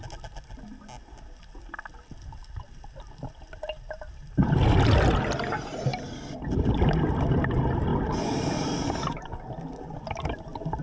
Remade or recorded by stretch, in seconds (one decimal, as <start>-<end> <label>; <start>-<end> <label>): 0.0-2.4 recorded; 2.4-4.4 remade; 4.4-10.8 recorded